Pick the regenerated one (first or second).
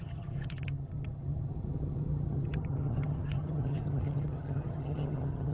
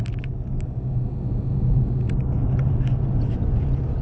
first